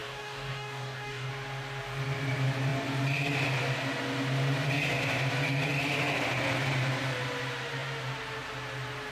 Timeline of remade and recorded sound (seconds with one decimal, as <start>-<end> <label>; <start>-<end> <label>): 0.0-1.3 remade; 1.3-9.1 recorded